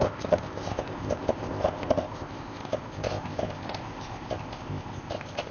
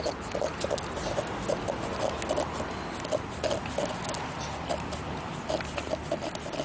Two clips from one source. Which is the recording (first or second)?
second